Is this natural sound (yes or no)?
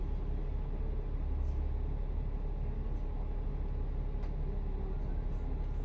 yes